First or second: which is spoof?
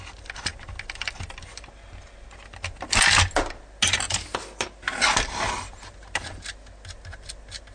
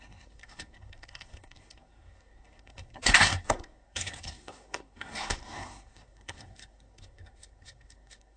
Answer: second